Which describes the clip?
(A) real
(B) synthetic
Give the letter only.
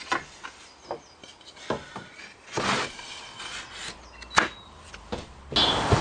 A